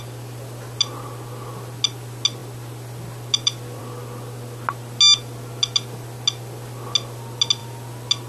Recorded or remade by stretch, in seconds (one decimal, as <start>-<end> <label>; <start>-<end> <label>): 0.0-8.3 recorded